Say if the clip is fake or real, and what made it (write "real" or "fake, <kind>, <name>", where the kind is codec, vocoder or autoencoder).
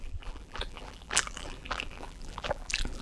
fake, vocoder, BigVGAN v2